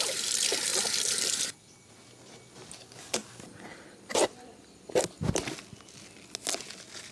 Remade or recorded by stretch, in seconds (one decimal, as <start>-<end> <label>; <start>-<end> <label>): 0.0-7.1 recorded